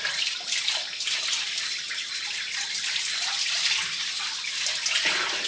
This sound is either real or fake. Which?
real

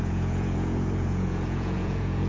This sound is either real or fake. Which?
fake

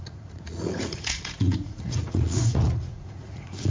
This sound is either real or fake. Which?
fake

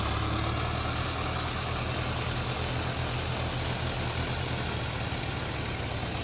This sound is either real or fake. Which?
real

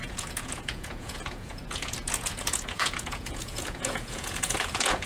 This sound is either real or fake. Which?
fake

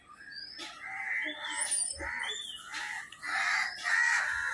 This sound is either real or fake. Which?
real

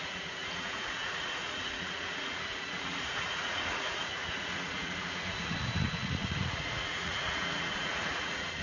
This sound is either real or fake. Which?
fake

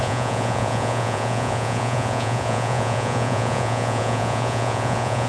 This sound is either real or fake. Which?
fake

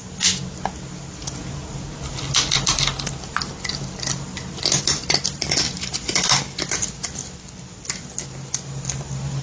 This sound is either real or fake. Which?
real